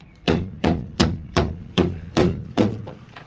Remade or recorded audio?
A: remade